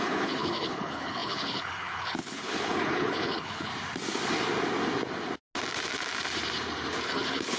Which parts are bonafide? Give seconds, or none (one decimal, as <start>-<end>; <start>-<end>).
3.7-7.0